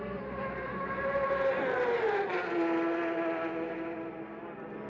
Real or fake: real